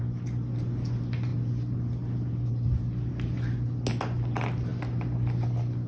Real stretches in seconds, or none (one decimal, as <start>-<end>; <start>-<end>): 0.0-5.9